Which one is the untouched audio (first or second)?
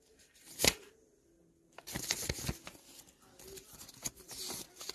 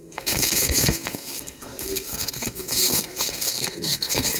first